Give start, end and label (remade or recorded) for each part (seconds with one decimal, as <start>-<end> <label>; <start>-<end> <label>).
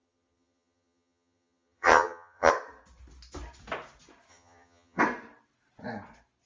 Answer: 0.0-2.5 remade; 2.5-4.3 recorded; 4.3-5.0 remade; 5.0-6.5 recorded